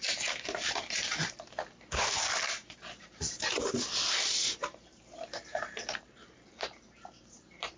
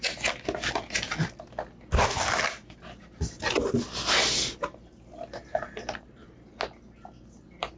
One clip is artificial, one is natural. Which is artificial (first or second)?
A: first